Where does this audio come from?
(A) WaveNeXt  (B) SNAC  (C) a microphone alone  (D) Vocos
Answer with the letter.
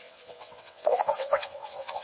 A